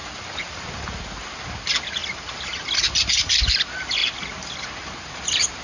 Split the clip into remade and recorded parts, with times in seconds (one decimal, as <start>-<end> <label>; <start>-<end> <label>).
0.0-0.8 remade; 0.8-2.0 recorded; 2.0-3.6 remade; 3.6-4.0 recorded; 4.0-4.6 remade; 4.6-5.6 recorded